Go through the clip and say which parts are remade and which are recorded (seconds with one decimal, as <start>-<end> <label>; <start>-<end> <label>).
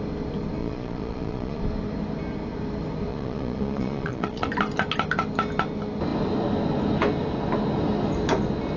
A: 0.0-0.6 recorded; 0.6-1.6 remade; 1.6-3.1 recorded; 3.1-4.5 remade; 4.5-8.8 recorded